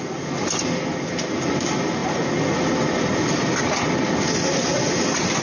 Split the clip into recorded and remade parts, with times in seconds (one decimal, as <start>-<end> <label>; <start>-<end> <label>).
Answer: 0.0-5.4 recorded